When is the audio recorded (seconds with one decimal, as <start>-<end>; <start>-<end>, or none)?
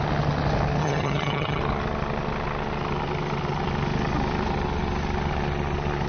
0.0-0.8; 1.6-6.1